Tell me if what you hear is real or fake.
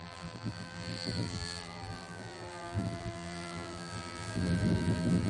fake